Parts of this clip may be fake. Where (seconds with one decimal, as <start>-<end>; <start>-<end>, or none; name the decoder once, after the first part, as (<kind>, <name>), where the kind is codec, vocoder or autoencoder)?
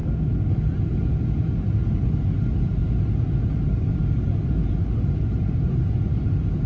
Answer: none